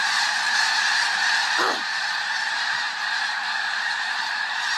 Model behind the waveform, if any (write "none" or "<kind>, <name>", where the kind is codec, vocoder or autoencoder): vocoder, BigVGAN v2